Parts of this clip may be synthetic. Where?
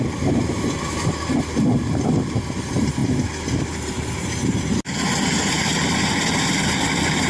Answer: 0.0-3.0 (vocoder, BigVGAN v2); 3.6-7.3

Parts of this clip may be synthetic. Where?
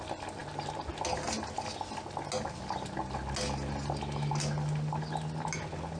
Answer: none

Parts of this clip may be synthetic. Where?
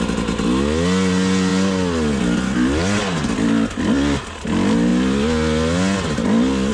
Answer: none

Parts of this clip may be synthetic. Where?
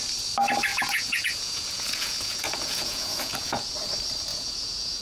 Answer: 0.7-3.7 (vocoder, Vocos); 4.3-5.0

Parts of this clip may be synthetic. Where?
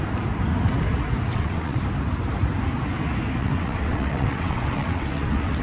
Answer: 1.3-1.8 (vocoder, WaveNeXt); 3.4-5.6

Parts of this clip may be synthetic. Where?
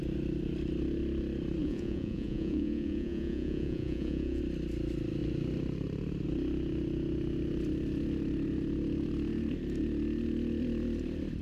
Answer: 1.6-4.4 (vocoder, Vocos)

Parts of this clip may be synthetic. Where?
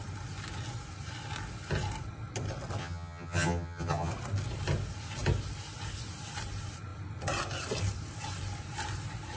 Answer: 2.8-4.1 (vocoder, HiFi-GAN)